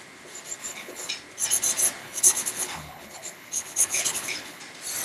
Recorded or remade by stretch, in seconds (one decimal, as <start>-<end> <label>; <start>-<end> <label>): 0.0-0.6 recorded; 0.6-1.1 remade; 1.1-2.0 recorded; 2.0-4.6 remade; 4.6-5.0 recorded